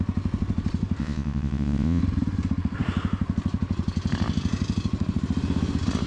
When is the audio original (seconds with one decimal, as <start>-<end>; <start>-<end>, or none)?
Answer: 0.0-1.0; 2.0-6.1